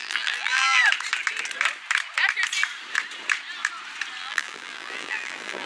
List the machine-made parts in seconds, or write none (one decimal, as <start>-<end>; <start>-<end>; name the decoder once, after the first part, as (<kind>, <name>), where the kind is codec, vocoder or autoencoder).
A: 0.0-0.8 (vocoder, BigVGAN v2); 4.2-5.7